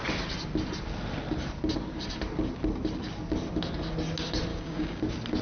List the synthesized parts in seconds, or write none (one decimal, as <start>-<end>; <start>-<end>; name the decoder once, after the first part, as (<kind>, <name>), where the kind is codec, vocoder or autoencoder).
4.5-5.0 (codec, DAC)